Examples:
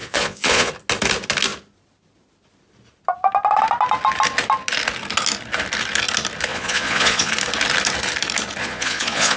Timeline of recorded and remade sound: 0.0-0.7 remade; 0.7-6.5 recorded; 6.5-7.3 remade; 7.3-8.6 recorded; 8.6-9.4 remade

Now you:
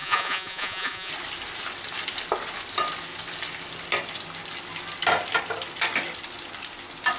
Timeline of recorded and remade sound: 0.0-1.1 remade; 1.1-7.2 recorded

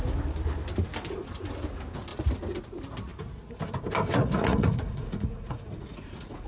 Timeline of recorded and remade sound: 0.0-4.2 recorded; 4.2-6.5 remade

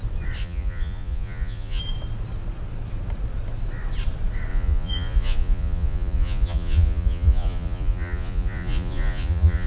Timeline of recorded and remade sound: 0.0-0.4 recorded; 0.4-1.8 remade; 1.8-4.5 recorded; 4.5-9.7 remade